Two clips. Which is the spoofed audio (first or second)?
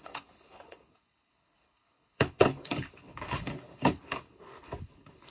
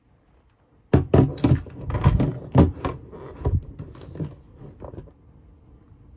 first